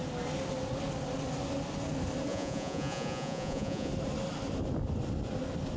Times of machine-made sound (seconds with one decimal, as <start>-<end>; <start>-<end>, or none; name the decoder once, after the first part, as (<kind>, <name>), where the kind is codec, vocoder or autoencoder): 2.3-3.9 (vocoder, Vocos)